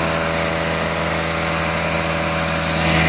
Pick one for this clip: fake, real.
real